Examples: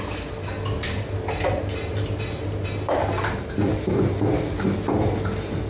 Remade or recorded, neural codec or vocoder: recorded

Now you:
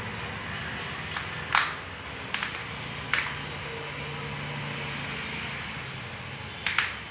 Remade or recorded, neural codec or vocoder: recorded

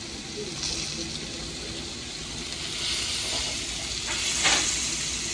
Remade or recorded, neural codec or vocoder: recorded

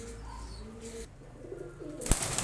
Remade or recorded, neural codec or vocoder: recorded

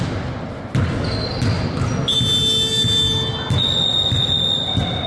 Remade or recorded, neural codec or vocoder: recorded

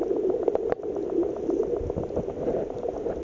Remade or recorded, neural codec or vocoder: remade, vocoder, BigVGAN v2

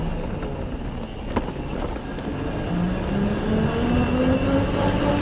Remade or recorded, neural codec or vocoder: recorded